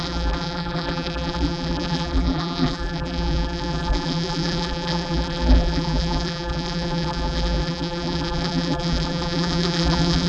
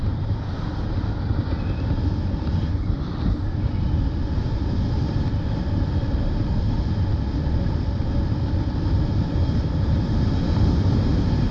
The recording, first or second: second